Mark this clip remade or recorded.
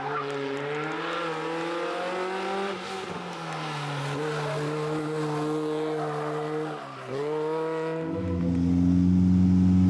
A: recorded